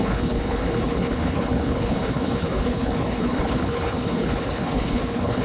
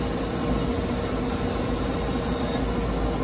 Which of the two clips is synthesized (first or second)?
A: first